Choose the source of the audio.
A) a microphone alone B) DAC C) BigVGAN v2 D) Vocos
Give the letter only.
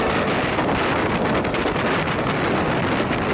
A